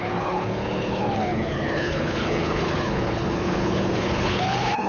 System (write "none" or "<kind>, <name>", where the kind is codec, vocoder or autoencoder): codec, HILCodec